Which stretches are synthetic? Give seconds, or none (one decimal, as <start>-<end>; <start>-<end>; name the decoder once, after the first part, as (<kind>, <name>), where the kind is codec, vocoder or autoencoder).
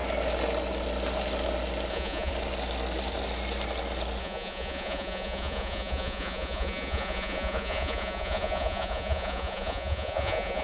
1.9-2.3 (vocoder, Vocos); 4.2-10.6